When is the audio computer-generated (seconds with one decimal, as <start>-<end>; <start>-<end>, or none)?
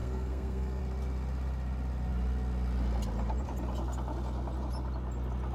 0.0-0.8